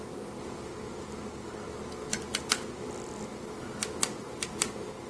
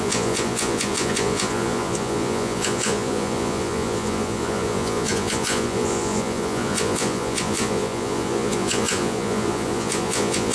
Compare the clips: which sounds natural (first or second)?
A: first